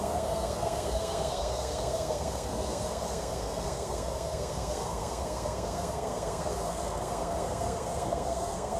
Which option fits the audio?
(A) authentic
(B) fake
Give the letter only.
B